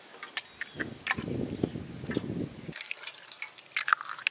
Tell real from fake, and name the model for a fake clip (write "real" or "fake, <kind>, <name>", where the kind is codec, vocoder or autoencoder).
real